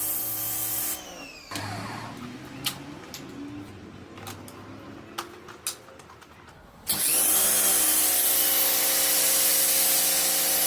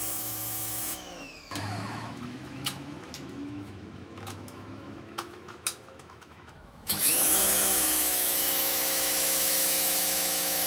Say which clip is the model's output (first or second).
second